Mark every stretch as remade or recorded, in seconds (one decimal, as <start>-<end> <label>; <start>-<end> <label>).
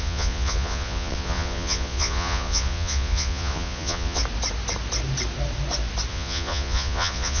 0.0-4.2 remade; 4.2-6.1 recorded; 6.1-7.4 remade